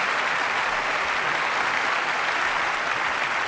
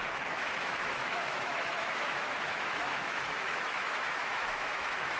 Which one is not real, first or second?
second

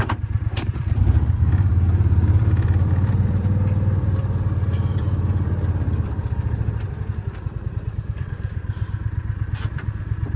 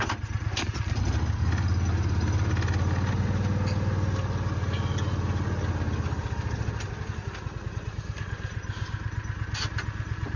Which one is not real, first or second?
first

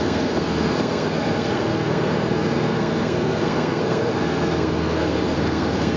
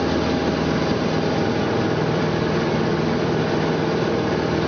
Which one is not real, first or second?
first